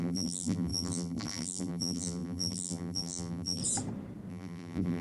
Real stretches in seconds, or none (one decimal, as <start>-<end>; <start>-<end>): 3.6-4.3